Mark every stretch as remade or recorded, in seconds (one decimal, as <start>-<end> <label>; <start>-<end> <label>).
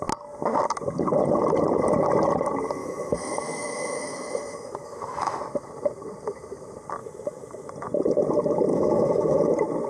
0.0-2.8 recorded; 2.8-5.4 remade; 5.4-7.0 recorded; 7.0-7.7 remade; 7.7-8.7 recorded; 8.7-9.4 remade; 9.4-9.9 recorded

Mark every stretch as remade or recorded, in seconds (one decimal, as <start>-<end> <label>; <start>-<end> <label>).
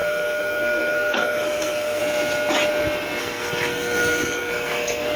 0.0-2.0 remade; 2.0-3.2 recorded; 3.2-5.2 remade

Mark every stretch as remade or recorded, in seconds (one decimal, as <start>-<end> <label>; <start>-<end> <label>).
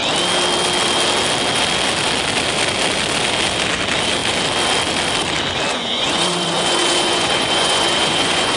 0.0-5.7 recorded; 5.7-8.6 remade